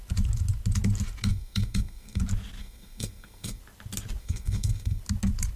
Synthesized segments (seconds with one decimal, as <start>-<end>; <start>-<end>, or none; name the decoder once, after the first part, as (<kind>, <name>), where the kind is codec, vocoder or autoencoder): 1.3-2.2 (codec, SNAC); 2.6-3.6; 4.2-5.0

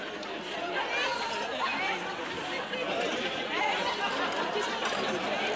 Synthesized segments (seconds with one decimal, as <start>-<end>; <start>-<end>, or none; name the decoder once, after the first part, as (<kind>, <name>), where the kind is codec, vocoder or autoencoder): none

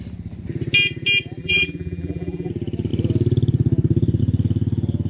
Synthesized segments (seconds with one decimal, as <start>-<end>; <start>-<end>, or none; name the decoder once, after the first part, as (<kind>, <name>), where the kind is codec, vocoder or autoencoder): 1.4-2.5 (vocoder, BigVGAN v2)

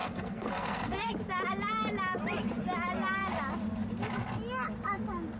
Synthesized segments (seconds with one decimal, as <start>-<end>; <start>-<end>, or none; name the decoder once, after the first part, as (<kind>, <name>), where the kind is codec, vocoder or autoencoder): 0.0-1.1 (codec, SNAC)